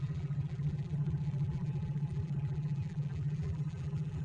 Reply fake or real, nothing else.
fake